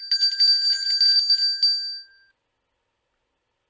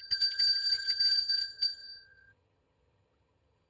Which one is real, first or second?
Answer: first